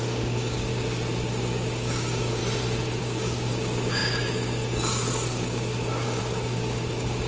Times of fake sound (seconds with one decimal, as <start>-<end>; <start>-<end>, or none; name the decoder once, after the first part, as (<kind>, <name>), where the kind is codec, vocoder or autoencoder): 0.0-0.7 (codec, DAC); 1.3-2.4; 3.0-7.3